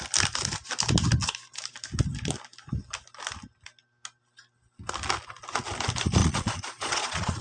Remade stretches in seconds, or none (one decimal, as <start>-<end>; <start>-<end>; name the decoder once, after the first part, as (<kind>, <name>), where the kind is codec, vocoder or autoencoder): 6.2-7.4 (vocoder, Vocos)